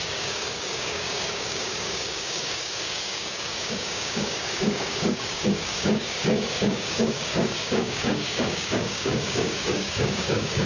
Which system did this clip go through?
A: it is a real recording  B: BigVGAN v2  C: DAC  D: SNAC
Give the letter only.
C